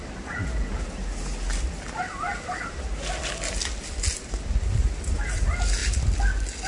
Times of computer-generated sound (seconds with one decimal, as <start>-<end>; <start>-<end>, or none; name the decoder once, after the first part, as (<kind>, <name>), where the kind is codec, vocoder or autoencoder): none